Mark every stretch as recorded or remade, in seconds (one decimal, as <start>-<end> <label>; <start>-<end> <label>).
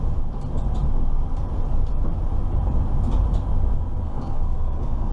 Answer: 0.0-4.0 recorded; 4.0-5.1 remade